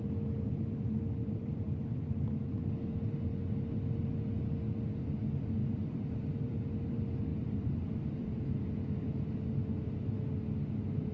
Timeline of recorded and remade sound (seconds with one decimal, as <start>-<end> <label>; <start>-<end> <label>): 0.0-1.2 recorded; 1.2-2.0 remade; 2.0-5.6 recorded; 5.6-6.6 remade; 6.6-7.3 recorded; 7.3-8.3 remade; 8.3-11.1 recorded